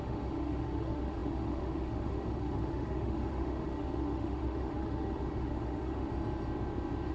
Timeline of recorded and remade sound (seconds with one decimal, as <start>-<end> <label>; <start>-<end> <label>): 0.0-6.1 remade; 6.1-7.1 recorded